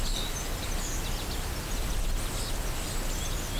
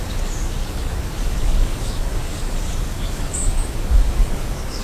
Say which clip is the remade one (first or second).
second